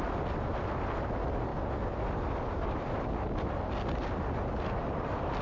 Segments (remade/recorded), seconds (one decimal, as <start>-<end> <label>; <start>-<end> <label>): 0.0-5.4 recorded